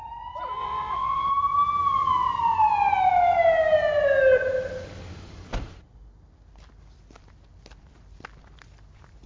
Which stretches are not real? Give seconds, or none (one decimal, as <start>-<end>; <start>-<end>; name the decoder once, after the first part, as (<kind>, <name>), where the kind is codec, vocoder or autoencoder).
0.6-1.3 (vocoder, WaveNeXt)